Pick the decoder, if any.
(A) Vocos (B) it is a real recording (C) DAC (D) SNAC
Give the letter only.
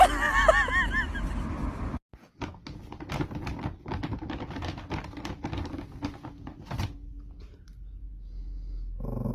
B